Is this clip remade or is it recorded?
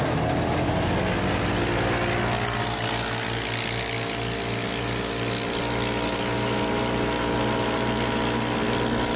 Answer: recorded